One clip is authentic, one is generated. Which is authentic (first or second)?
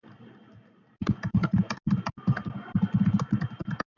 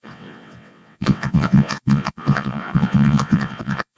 first